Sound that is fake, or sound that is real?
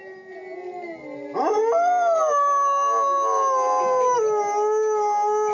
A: real